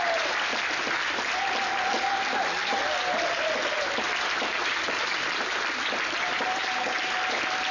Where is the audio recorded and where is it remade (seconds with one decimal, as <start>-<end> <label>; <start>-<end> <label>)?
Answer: 0.0-7.7 recorded